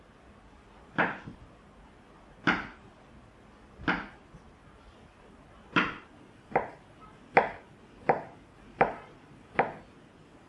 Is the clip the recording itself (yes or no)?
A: yes